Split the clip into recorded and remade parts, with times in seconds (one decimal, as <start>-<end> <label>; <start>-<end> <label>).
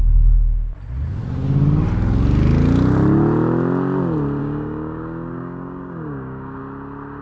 0.0-4.4 recorded; 4.4-6.6 remade; 6.6-7.2 recorded